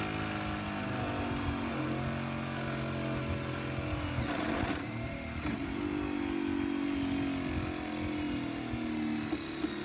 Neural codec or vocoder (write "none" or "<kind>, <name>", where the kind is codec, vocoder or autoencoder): none